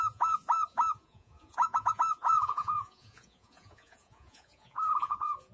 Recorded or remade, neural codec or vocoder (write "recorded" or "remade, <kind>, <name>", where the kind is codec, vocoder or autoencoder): remade, vocoder, Vocos